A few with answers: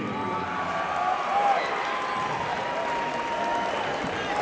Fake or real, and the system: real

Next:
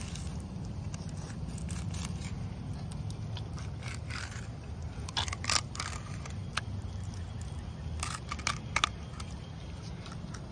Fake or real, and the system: real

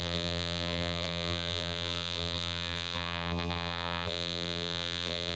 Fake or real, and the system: fake, vocoder, BigVGAN v2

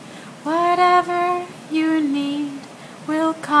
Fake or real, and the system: real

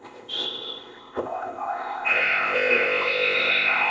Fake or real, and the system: fake, codec, ZipCodec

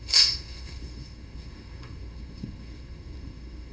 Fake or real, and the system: fake, codec, SNAC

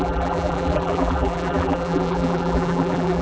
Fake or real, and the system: fake, vocoder, BigVGAN v2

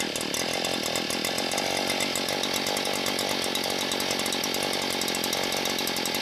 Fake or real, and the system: real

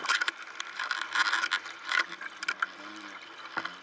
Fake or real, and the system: real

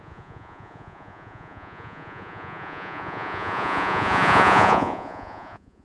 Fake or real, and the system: fake, vocoder, Vocos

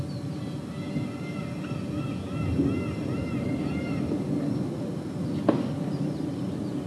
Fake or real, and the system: real